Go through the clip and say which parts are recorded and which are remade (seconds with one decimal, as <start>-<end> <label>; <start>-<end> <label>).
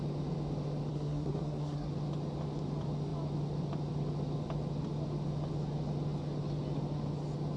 0.0-0.9 recorded; 0.9-1.9 remade; 1.9-7.6 recorded